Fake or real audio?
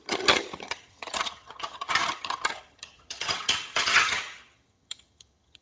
fake